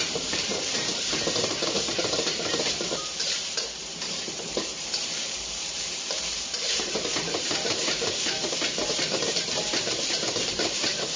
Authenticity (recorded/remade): remade